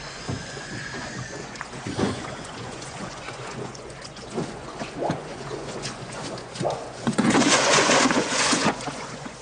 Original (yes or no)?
no